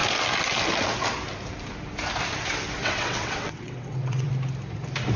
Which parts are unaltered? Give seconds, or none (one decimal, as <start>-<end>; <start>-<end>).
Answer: 0.0-2.8; 4.3-5.2